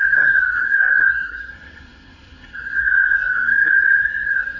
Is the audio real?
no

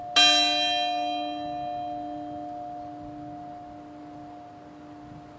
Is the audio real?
yes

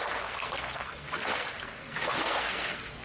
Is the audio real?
no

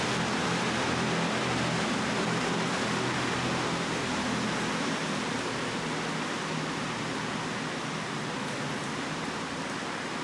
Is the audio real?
yes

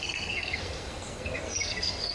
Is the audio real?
no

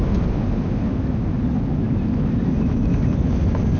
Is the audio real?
yes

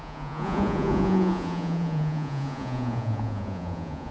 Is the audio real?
no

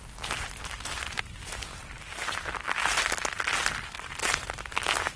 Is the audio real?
yes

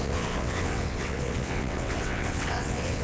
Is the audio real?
no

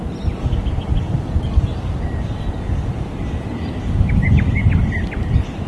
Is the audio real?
yes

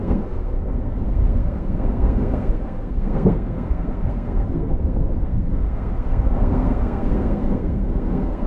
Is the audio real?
no